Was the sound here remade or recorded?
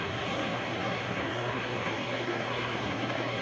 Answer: remade